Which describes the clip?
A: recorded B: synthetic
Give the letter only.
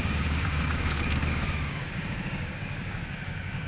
B